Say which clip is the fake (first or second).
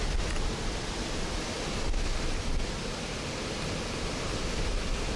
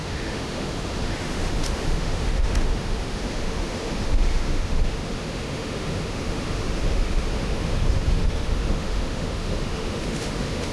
second